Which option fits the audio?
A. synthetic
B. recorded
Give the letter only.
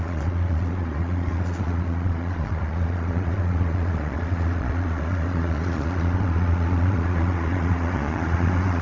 A